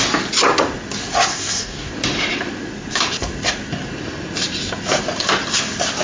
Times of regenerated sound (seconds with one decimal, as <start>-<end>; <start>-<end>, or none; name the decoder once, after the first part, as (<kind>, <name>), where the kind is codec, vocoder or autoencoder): 1.3-1.9 (codec, DAC)

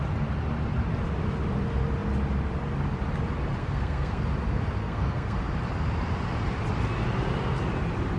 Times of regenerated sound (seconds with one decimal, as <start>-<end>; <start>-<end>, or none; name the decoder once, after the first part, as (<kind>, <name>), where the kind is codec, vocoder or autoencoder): 3.6-4.2 (codec, SNAC); 4.8-5.4

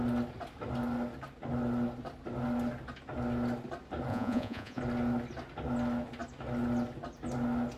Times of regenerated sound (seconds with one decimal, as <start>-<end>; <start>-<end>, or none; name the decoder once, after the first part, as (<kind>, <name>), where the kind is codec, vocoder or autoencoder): 4.1-4.8 (vocoder, Vocos)

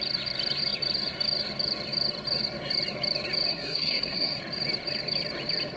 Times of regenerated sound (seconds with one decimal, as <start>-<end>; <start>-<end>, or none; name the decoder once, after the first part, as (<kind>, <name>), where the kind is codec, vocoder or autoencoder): 3.5-4.4 (codec, SNAC)

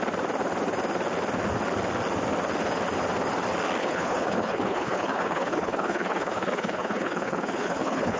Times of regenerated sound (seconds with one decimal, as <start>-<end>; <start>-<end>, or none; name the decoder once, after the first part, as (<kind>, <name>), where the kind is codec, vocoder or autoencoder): 3.8-8.2 (codec, HILCodec)

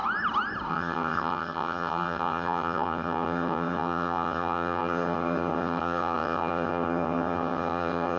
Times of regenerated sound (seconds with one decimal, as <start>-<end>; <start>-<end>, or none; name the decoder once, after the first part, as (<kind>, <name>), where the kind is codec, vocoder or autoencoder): 0.7-8.2 (vocoder, HiFi-GAN)